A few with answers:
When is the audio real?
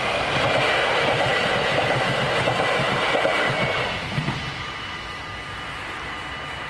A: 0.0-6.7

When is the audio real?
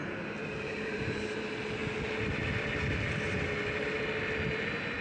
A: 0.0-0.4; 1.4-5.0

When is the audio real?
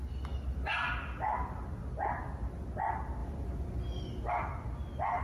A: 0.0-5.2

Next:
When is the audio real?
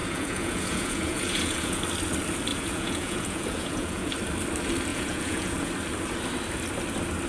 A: 1.8-2.5; 4.1-4.9; 5.7-7.3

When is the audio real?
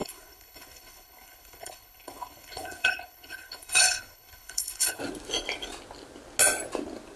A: 5.0-7.2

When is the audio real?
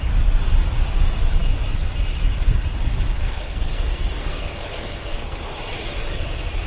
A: 0.0-3.2; 5.4-6.7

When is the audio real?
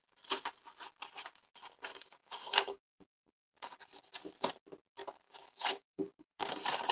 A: 0.0-1.9; 3.8-5.0; 6.5-6.9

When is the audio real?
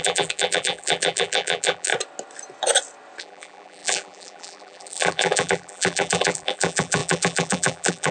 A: 1.9-3.2